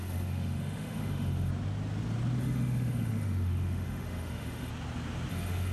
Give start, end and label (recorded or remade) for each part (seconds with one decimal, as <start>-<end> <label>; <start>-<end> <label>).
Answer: 0.0-1.5 remade; 1.5-2.4 recorded; 2.4-4.7 remade; 4.7-5.3 recorded; 5.3-5.7 remade